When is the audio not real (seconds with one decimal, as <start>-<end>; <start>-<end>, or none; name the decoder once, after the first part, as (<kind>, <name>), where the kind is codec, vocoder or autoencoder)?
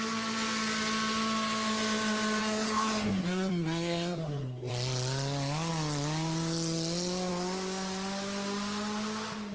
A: 2.4-4.7 (codec, SNAC)